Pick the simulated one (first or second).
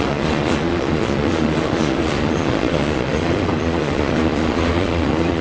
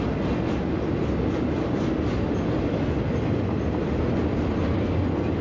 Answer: first